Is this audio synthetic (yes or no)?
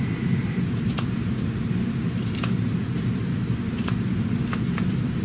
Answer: no